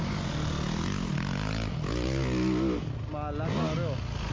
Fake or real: real